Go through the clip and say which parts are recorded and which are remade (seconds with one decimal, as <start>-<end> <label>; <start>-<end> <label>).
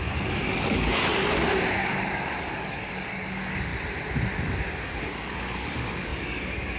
0.0-1.1 remade; 1.1-1.8 recorded; 1.8-3.7 remade; 3.7-4.8 recorded; 4.8-6.8 remade